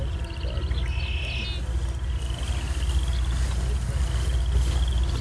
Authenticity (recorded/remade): recorded